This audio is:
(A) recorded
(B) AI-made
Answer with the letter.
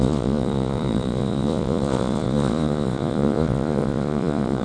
B